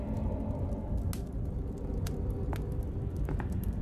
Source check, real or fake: real